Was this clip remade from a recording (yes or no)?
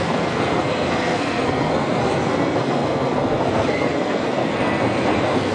yes